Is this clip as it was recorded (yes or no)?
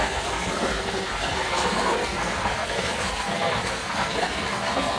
no